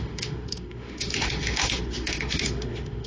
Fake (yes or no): yes